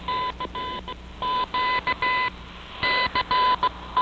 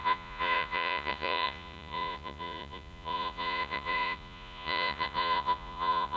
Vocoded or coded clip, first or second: second